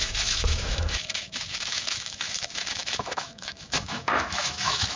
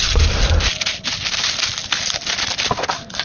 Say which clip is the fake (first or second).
first